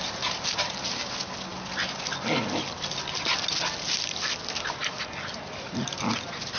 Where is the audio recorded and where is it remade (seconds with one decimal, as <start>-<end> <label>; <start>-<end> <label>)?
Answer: 0.0-6.6 recorded